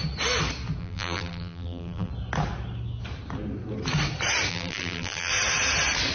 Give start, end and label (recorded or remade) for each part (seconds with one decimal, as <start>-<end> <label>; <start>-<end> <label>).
0.0-0.8 recorded; 0.8-2.1 remade; 2.1-4.5 recorded; 4.5-5.3 remade; 5.3-6.1 recorded